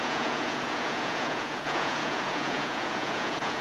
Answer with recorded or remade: remade